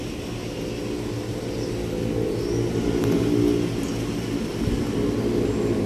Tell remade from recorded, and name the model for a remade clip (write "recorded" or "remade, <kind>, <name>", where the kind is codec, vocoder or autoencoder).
recorded